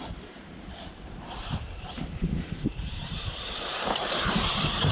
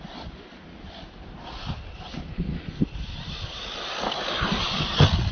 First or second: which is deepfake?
first